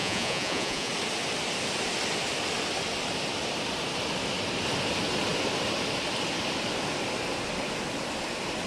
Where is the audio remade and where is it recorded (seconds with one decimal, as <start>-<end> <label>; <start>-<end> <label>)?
0.0-0.9 remade; 0.9-8.7 recorded